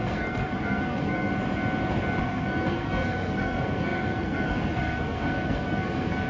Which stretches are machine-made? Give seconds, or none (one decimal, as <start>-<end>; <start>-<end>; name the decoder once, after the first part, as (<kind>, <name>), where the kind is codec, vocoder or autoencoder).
0.0-1.3 (codec, SNAC); 2.2-6.3